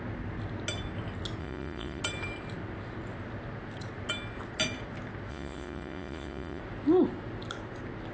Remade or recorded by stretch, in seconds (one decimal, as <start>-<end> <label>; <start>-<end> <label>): 0.0-1.4 recorded; 1.4-2.0 remade; 2.0-5.3 recorded; 5.3-6.6 remade; 6.6-8.1 recorded